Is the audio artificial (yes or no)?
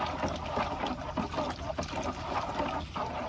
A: no